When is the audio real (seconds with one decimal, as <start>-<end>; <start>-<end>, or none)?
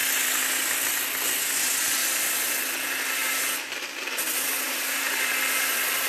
0.0-2.0; 2.6-3.2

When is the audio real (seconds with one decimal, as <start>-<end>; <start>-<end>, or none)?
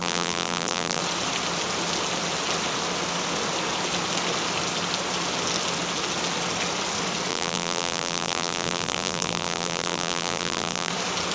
1.0-7.3; 10.9-11.3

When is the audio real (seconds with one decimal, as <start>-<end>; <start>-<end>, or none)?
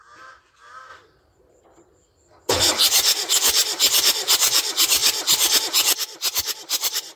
0.9-2.5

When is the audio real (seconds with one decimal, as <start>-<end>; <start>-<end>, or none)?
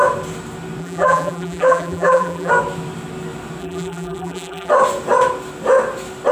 0.0-0.8; 2.5-3.6; 4.7-6.3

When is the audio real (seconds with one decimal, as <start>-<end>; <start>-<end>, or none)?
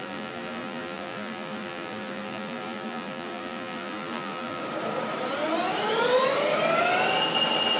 4.6-7.8